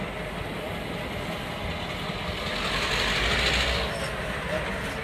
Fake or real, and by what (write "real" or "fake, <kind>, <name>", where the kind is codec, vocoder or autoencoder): real